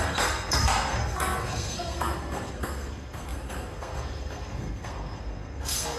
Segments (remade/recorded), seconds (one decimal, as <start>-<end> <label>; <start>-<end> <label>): 0.0-6.0 remade